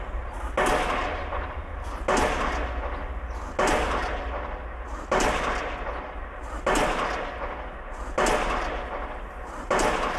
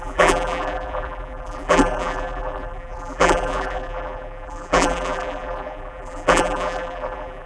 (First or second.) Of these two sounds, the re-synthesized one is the second